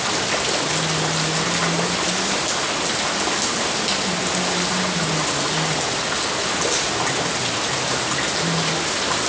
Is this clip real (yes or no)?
yes